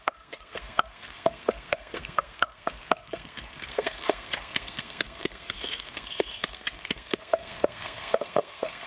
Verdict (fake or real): fake